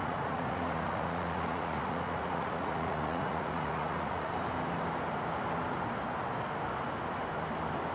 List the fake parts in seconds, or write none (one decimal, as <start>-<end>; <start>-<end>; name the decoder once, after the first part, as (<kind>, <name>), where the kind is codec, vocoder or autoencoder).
0.0-4.3 (vocoder, Vocos)